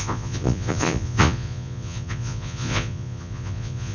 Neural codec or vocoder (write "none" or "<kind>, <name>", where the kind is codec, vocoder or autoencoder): vocoder, Vocos